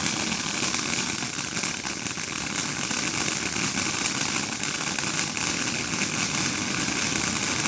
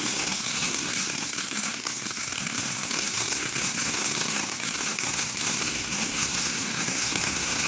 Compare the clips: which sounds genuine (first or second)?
first